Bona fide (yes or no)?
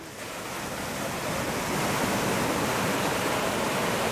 yes